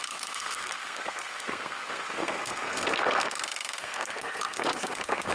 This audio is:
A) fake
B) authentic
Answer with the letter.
A